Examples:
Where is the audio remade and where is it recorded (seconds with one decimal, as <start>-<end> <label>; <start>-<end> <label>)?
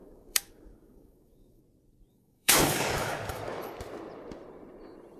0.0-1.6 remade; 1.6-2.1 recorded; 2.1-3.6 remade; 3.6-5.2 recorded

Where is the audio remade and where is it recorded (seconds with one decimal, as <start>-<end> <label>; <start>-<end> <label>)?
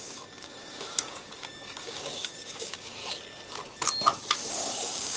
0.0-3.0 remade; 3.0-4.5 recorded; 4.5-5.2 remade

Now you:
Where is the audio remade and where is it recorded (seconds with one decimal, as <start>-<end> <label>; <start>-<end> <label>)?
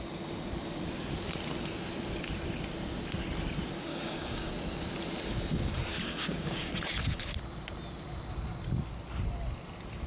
0.0-3.9 recorded; 3.9-4.5 remade; 4.5-5.9 recorded; 5.9-6.7 remade; 6.7-10.1 recorded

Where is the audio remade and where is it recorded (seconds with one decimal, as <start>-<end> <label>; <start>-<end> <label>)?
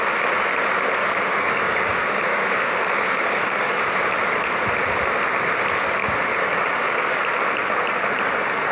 0.0-1.0 recorded; 1.0-3.8 remade; 3.8-6.0 recorded; 6.0-7.2 remade; 7.2-8.7 recorded